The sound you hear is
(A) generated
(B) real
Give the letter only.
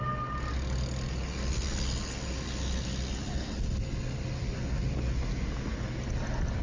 B